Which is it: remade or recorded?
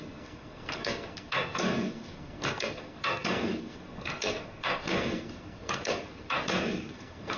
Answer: remade